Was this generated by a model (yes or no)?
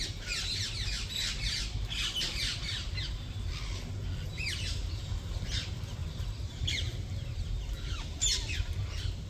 no